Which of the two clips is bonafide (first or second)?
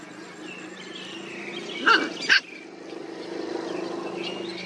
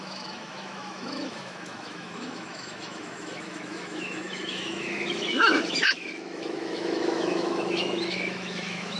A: first